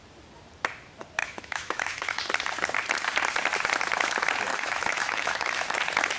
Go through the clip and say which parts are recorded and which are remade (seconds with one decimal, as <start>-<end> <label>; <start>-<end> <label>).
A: 0.0-1.2 recorded; 1.2-2.2 remade; 2.2-4.5 recorded; 4.5-5.8 remade; 5.8-6.2 recorded